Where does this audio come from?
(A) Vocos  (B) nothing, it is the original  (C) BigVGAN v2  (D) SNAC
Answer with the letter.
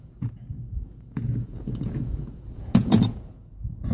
A